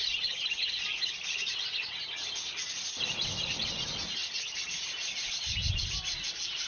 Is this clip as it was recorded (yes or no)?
yes